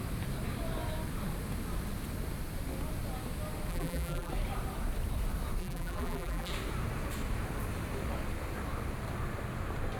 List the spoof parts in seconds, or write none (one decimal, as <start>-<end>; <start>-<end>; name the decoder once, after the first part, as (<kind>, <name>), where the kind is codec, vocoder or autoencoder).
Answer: 3.7-4.3 (vocoder, BigVGAN v2); 5.6-6.5